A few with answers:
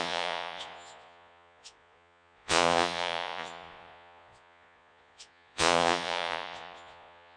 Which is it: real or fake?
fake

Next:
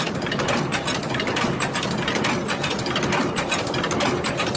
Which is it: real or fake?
real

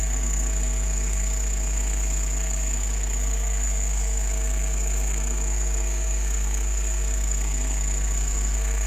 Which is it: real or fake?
fake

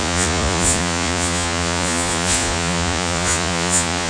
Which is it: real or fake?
fake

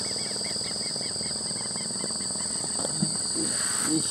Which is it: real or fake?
real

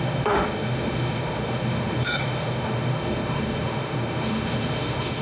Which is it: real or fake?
fake